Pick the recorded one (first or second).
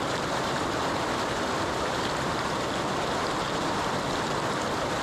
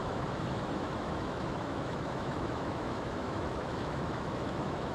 first